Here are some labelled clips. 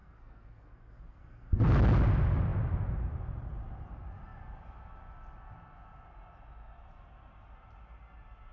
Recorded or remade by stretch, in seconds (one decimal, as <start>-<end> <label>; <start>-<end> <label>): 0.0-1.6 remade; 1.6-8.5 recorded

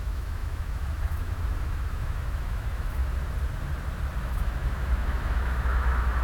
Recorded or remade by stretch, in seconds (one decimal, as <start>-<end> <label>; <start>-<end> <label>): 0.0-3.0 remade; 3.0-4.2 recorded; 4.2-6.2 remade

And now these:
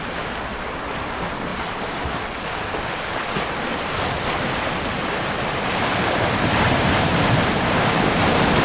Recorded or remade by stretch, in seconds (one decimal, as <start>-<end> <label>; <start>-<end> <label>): 0.0-1.5 recorded; 1.5-2.2 remade; 2.2-3.7 recorded; 3.7-8.2 remade; 8.2-8.6 recorded